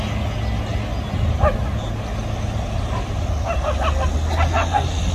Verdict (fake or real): real